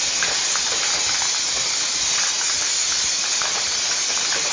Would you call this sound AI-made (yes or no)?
no